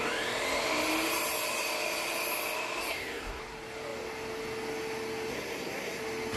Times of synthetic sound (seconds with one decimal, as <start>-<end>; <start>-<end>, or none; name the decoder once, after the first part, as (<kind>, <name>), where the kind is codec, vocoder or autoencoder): 2.9-3.4 (codec, SNAC); 5.3-6.0